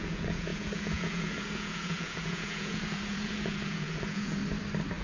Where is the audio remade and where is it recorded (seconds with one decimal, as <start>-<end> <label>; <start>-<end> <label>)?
0.0-4.4 remade; 4.4-5.0 recorded